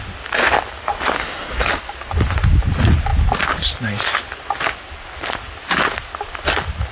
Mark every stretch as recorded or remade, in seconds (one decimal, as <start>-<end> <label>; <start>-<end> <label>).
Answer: 0.0-1.2 recorded; 1.2-1.7 remade; 1.7-6.9 recorded